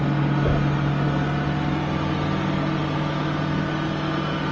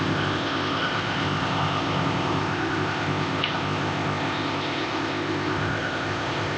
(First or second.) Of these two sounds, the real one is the first